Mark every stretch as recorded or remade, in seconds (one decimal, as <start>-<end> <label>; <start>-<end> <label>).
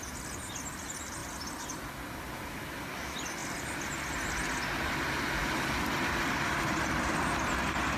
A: 0.0-1.2 recorded; 1.2-2.8 remade; 2.8-5.4 recorded; 5.4-7.3 remade; 7.3-8.0 recorded